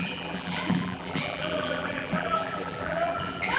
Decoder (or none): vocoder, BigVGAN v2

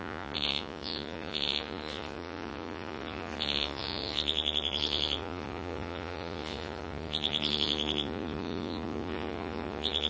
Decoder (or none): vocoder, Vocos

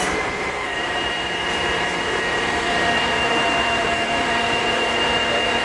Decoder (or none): vocoder, BigVGAN v2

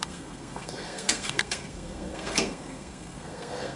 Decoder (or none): codec, SNAC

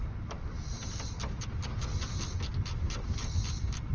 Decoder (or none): none